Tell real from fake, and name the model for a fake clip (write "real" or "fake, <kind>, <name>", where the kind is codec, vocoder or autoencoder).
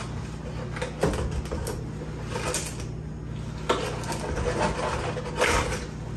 real